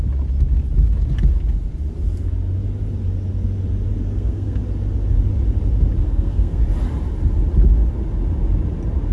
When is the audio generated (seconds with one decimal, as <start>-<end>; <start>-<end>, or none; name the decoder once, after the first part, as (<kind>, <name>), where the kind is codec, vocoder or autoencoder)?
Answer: 4.0-4.6 (codec, SNAC); 6.0-6.6